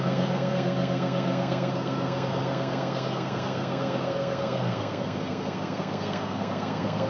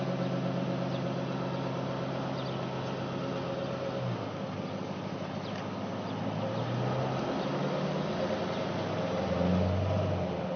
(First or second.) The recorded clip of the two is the second